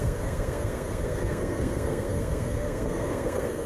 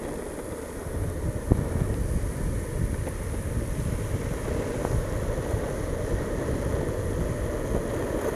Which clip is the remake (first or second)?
first